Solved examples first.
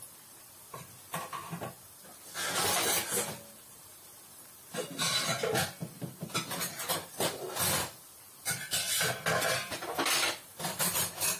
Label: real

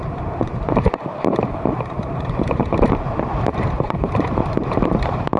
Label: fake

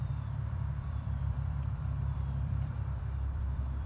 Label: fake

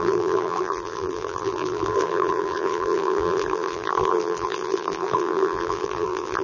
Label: fake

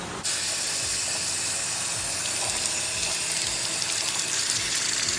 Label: real